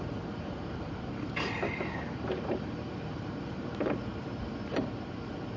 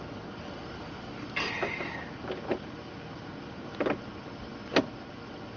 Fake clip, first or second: first